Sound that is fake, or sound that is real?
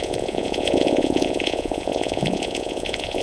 fake